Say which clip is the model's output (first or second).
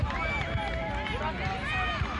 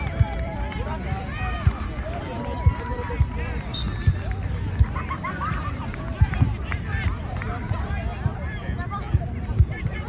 second